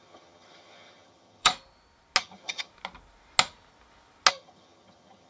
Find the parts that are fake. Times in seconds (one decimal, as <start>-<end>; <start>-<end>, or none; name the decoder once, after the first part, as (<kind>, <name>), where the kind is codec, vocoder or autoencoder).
0.0-1.5 (vocoder, HiFi-GAN); 2.2-2.7; 4.3-5.3